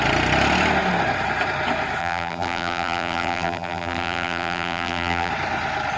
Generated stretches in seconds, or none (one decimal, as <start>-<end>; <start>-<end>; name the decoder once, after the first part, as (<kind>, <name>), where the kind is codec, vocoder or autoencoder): 2.0-5.3 (vocoder, BigVGAN v2)